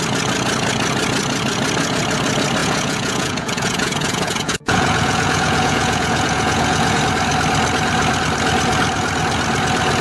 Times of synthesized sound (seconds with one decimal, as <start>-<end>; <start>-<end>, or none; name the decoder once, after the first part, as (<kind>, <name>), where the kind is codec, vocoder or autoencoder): 2.6-7.0 (vocoder, Vocos)

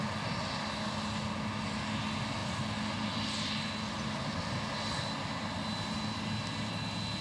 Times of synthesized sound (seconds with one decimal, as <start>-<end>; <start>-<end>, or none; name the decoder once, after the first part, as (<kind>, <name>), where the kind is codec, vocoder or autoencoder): none